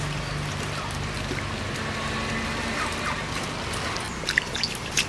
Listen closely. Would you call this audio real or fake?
real